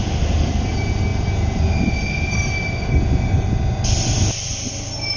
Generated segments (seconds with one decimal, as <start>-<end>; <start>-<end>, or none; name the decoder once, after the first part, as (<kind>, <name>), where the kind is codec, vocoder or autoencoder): none